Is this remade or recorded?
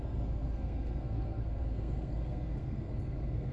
remade